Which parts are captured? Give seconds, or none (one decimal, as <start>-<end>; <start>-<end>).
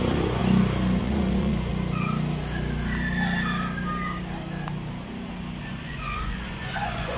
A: 0.4-1.0; 1.7-5.6